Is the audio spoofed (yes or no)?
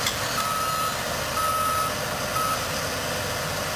no